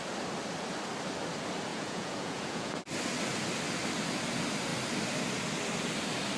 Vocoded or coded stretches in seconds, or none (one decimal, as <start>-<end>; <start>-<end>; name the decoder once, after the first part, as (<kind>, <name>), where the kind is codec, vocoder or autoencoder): 1.7-2.8 (vocoder, Vocos)